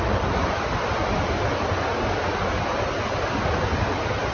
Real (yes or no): yes